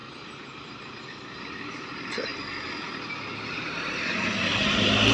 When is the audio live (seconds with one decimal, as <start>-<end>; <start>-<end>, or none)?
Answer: 2.3-3.5